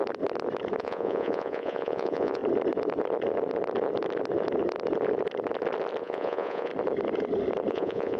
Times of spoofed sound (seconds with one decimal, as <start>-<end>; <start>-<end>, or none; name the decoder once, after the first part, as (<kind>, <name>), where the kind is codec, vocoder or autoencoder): 0.8-2.4 (vocoder, Vocos); 6.0-6.7; 7.7-8.2

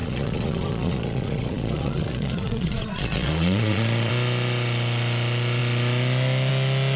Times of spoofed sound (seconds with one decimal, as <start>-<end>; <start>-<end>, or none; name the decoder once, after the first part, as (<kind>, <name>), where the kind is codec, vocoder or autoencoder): 0.0-4.1 (vocoder, Vocos)

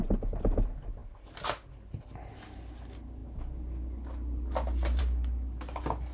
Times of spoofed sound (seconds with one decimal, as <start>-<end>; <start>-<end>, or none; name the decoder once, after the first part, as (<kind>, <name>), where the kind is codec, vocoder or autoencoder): none